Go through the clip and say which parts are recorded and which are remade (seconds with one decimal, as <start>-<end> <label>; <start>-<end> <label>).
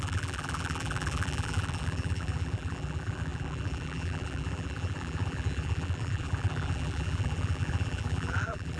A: 0.0-8.8 remade